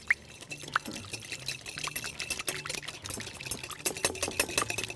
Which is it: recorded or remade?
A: recorded